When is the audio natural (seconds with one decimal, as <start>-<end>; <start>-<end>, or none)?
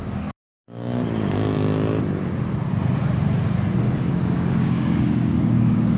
0.5-4.1